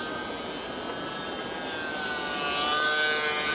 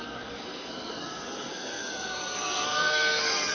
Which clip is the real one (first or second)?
first